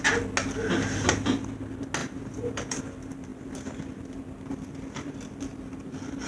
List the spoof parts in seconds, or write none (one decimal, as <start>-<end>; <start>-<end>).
2.0-2.9